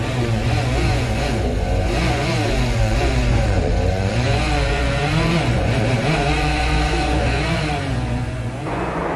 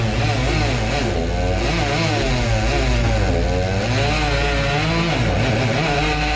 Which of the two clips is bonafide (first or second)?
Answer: second